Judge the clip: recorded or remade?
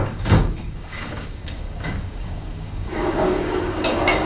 remade